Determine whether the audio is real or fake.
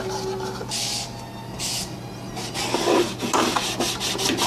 real